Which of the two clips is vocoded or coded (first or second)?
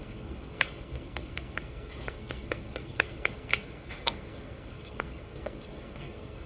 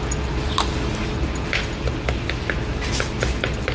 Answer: first